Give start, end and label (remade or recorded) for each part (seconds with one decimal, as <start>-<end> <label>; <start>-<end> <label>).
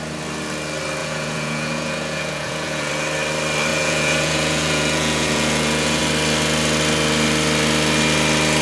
0.0-1.0 recorded; 1.0-2.9 remade; 2.9-3.7 recorded; 3.7-6.0 remade; 6.0-8.6 recorded